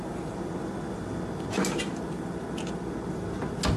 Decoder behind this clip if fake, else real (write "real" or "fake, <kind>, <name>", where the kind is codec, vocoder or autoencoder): real